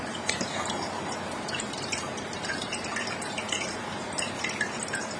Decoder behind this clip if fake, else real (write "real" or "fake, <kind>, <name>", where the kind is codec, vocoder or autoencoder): fake, vocoder, BigVGAN v2